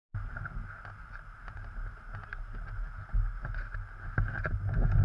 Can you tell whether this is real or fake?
real